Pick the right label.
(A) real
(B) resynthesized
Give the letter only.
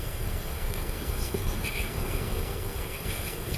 B